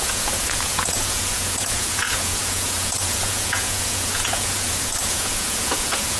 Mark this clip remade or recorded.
remade